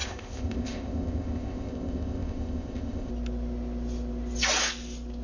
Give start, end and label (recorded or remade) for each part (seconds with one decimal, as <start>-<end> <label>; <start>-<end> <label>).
0.0-3.1 remade; 3.1-5.2 recorded

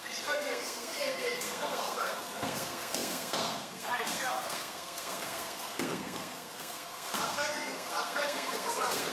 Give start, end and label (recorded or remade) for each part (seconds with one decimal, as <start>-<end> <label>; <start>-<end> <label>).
0.0-9.1 remade

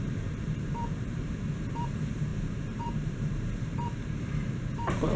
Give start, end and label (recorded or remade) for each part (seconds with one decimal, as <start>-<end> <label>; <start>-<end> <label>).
0.0-5.2 remade

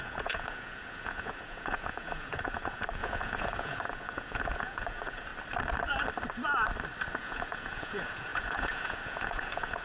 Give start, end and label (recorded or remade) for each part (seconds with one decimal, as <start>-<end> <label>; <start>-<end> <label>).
0.0-5.3 remade; 5.3-7.1 recorded; 7.1-9.8 remade